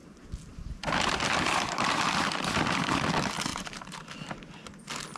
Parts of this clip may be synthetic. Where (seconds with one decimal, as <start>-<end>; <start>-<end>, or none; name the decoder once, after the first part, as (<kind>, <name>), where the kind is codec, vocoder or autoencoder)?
0.0-3.1 (vocoder, BigVGAN v2); 3.5-4.3